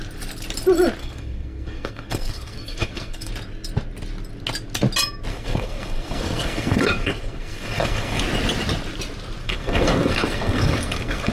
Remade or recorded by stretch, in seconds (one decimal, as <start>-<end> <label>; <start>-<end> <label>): 0.0-1.0 recorded; 1.0-3.3 remade; 3.3-5.3 recorded; 5.3-8.2 remade; 8.2-9.4 recorded; 9.4-11.3 remade